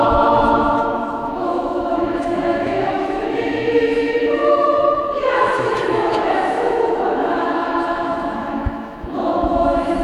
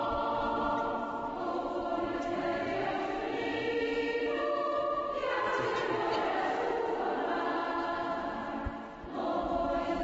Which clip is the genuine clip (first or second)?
second